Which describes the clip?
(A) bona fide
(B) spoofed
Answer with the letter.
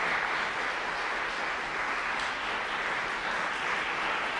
A